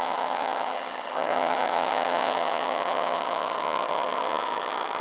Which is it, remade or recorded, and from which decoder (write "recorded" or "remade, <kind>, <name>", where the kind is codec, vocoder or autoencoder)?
remade, vocoder, HiFi-GAN